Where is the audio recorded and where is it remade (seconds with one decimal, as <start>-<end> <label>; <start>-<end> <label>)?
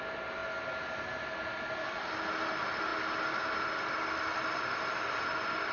0.0-5.7 recorded